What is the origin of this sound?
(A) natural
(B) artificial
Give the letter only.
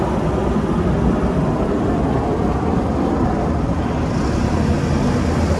A